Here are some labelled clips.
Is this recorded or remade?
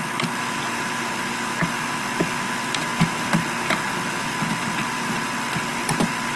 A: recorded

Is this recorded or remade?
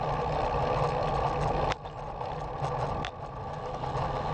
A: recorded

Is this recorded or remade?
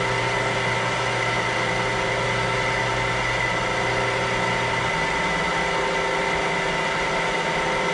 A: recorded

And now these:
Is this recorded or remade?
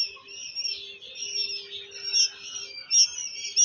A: recorded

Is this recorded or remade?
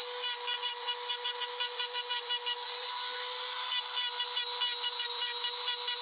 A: recorded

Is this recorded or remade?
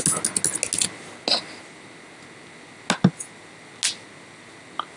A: recorded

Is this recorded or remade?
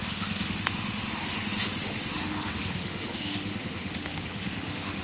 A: remade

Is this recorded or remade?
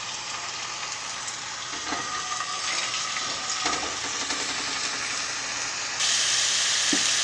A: recorded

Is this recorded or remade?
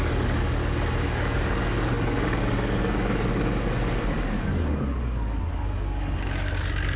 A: remade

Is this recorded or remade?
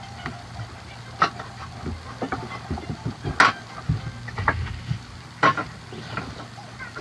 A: recorded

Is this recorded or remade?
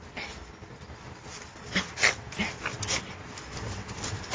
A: recorded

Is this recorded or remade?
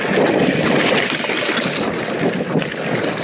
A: recorded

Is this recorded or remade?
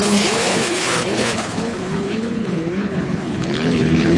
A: remade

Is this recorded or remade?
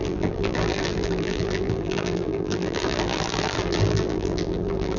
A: remade